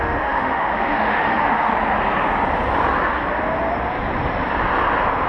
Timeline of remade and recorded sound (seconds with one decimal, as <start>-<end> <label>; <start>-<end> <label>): 0.0-1.7 remade; 1.7-5.3 recorded